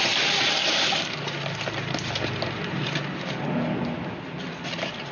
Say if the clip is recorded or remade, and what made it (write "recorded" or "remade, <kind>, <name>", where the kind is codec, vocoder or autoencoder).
recorded